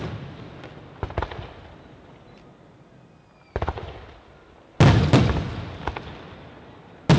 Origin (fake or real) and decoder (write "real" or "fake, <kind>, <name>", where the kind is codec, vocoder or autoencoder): real